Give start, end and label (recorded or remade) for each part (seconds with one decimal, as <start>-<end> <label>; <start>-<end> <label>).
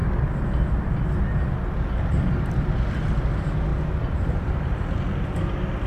0.0-3.7 recorded; 3.7-4.6 remade; 4.6-5.9 recorded